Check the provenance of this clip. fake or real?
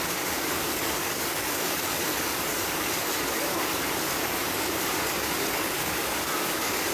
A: fake